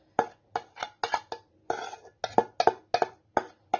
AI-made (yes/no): no